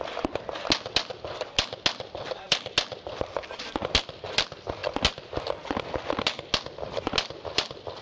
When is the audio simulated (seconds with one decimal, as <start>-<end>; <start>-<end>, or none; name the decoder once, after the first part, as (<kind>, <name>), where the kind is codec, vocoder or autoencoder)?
none